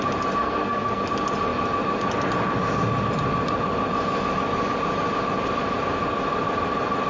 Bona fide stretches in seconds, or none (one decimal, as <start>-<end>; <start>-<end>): 0.0-0.4; 1.0-7.1